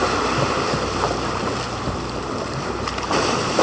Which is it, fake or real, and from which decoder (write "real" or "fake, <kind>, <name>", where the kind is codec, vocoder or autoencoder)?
real